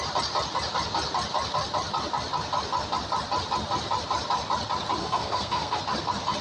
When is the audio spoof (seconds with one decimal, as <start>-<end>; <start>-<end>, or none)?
5.0-5.8